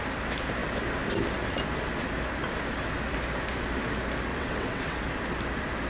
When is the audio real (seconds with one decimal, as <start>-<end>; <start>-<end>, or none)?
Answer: 0.0-4.3; 5.0-5.9